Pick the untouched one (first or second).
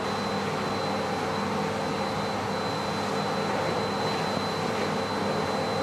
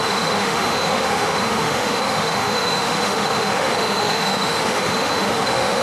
first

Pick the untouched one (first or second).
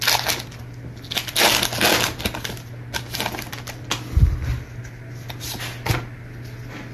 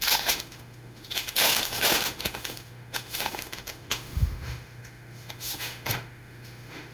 first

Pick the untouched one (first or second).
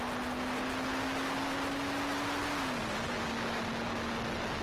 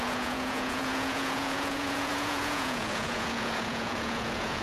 first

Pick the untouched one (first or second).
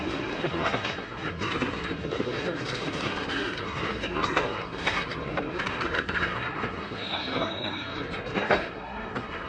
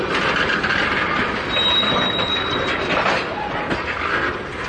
second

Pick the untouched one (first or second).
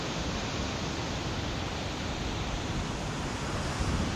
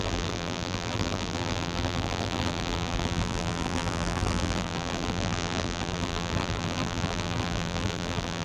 first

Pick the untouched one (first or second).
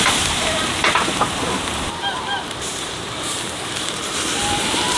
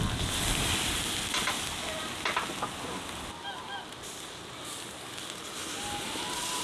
second